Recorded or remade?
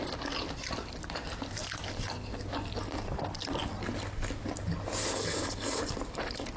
recorded